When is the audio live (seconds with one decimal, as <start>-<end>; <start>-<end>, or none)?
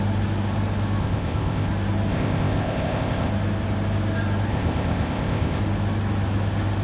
0.0-1.0; 1.7-2.1; 3.3-4.5; 5.6-6.8